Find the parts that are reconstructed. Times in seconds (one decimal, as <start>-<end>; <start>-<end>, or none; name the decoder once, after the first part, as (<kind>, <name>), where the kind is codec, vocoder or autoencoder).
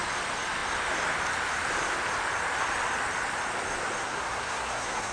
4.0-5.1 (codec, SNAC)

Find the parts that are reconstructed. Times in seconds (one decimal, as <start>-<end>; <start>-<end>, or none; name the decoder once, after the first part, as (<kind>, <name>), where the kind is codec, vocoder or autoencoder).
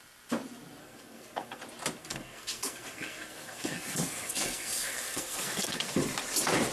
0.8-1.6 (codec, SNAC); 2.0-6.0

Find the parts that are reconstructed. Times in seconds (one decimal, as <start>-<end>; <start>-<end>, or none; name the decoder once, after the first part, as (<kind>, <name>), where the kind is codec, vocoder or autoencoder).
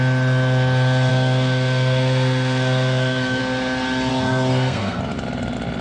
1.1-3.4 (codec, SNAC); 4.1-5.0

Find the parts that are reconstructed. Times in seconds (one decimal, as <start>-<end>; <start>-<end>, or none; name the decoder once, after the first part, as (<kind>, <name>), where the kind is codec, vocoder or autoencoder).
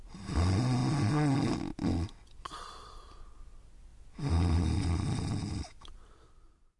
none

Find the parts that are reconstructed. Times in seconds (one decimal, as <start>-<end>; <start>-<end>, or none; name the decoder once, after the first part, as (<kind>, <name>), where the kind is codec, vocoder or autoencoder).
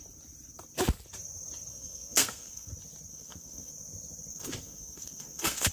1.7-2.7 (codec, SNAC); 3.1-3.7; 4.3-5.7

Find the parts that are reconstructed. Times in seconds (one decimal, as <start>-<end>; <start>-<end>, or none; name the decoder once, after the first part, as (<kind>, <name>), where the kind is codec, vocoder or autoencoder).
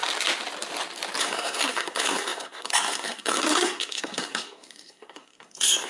1.2-5.9 (codec, SNAC)